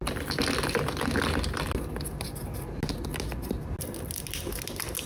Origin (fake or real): real